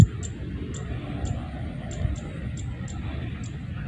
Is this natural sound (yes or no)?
yes